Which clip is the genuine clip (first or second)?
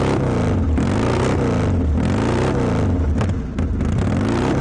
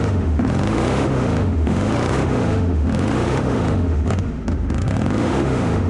first